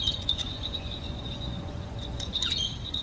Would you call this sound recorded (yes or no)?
no